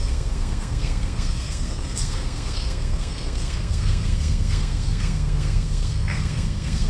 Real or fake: fake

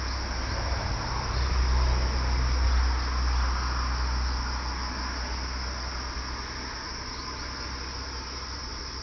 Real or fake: real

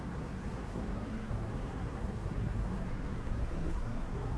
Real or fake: fake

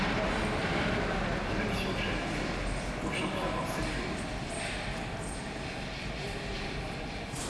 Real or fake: real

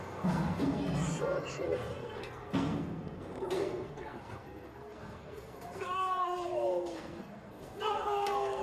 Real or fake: fake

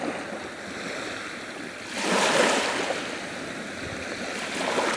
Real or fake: real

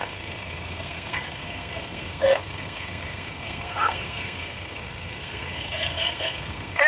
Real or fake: fake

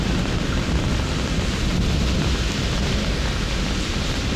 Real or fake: real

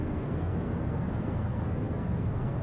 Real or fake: fake